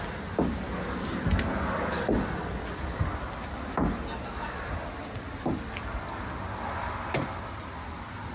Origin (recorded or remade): recorded